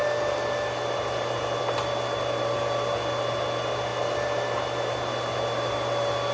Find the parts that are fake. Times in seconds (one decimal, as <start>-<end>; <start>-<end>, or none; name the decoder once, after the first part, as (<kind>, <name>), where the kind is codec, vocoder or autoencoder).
none